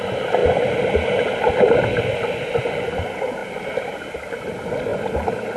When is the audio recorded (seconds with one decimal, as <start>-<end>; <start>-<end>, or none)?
0.0-5.6

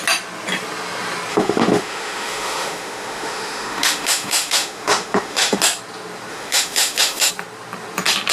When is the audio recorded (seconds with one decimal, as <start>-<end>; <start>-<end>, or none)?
0.0-1.3; 5.6-6.3; 7.3-8.3

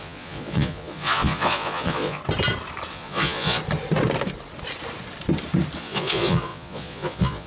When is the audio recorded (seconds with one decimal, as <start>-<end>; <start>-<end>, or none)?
2.2-2.9; 3.6-5.8